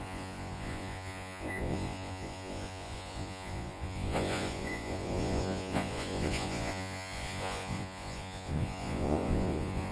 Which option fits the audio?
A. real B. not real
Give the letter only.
B